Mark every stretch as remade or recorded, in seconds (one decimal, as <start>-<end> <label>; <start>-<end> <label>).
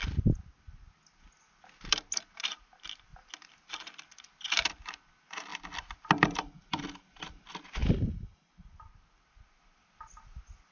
0.0-10.7 recorded